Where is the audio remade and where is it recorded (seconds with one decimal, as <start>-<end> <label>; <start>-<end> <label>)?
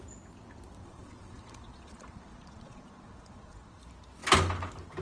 0.0-0.8 recorded; 0.8-3.8 remade; 3.8-5.0 recorded